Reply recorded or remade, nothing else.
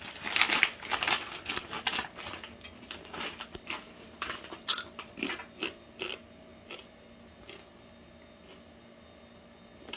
recorded